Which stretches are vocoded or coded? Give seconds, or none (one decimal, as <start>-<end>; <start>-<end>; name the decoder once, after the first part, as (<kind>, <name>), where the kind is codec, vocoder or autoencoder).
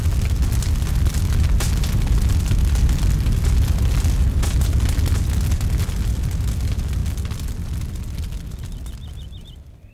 none